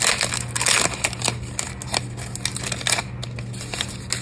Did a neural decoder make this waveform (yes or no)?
no